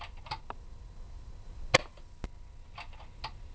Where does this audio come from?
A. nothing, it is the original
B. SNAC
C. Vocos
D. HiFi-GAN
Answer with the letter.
A